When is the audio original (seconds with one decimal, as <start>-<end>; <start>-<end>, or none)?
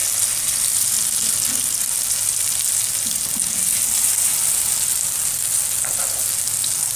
0.0-7.0